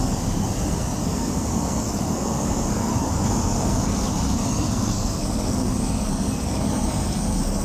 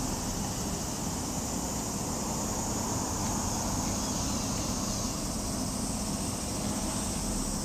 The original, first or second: second